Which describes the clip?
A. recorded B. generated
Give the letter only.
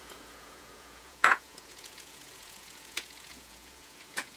B